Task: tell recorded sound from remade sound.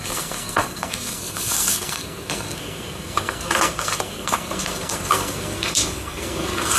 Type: remade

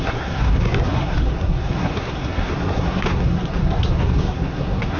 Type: remade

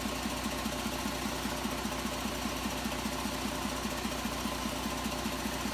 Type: recorded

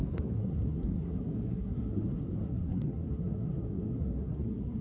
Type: remade